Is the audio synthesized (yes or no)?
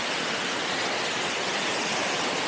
no